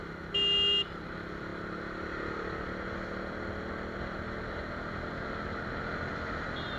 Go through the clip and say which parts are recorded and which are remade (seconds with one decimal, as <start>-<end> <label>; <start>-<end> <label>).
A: 0.0-6.8 recorded